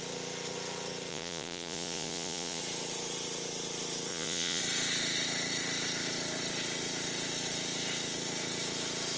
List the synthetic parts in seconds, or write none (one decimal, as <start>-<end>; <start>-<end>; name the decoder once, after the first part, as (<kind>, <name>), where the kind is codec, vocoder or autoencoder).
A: 1.1-2.6 (vocoder, Vocos); 4.1-4.6